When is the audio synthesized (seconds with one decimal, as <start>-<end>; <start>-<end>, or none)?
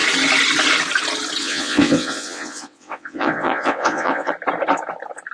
1.4-4.3